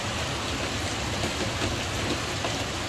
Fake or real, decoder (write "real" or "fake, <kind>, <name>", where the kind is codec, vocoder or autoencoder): fake, vocoder, BigVGAN v2